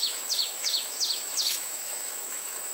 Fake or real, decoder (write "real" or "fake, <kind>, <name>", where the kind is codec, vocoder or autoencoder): fake, autoencoder, DAC-VAE